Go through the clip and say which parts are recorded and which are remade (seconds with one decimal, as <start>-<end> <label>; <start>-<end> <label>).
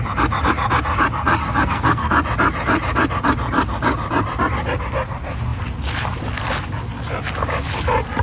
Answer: 0.0-1.4 recorded; 1.4-2.1 remade; 2.1-8.2 recorded